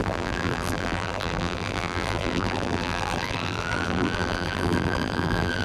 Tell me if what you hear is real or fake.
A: fake